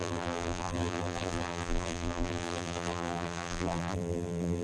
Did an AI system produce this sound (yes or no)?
yes